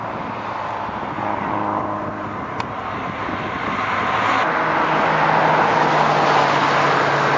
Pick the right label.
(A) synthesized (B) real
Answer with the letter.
B